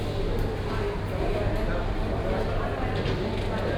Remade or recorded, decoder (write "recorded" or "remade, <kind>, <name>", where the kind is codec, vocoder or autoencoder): recorded